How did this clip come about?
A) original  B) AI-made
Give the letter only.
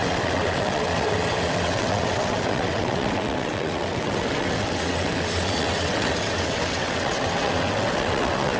B